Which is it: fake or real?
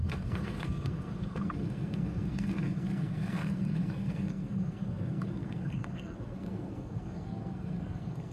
fake